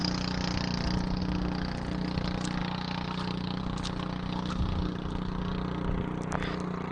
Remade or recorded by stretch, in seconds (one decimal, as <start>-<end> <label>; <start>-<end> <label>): 0.0-6.9 recorded